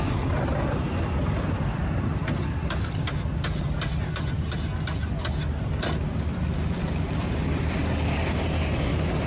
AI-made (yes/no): no